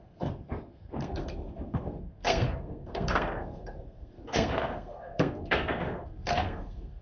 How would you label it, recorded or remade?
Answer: remade